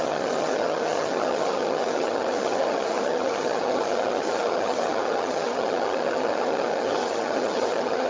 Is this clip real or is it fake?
fake